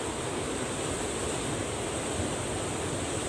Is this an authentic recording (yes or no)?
yes